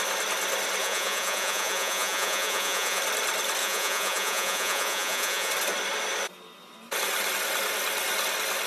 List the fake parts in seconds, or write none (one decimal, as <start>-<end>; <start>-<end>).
0.8-3.0; 3.6-5.5